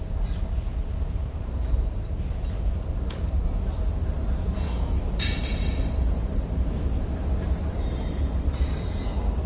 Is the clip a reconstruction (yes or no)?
no